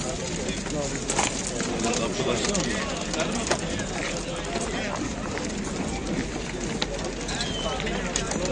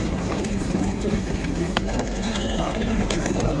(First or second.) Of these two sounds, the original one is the first